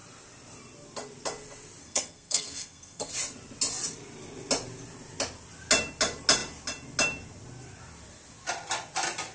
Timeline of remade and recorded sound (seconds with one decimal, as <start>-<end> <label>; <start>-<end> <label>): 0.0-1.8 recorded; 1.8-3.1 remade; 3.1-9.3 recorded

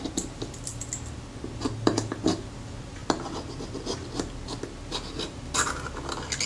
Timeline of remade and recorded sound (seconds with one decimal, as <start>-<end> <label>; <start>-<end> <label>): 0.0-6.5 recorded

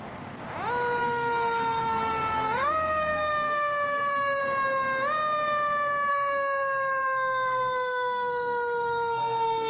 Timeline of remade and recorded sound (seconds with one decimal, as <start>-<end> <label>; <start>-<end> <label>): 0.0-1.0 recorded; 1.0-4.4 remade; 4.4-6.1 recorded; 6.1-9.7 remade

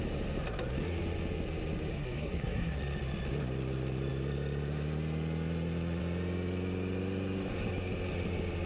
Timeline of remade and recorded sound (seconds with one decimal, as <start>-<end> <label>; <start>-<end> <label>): 0.0-1.9 recorded; 1.9-2.8 remade; 2.8-8.7 recorded

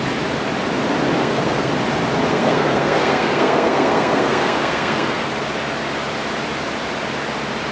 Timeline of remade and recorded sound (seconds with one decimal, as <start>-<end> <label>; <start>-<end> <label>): 0.0-1.2 recorded; 1.2-1.7 remade; 1.7-2.3 recorded; 2.3-5.3 remade; 5.3-7.7 recorded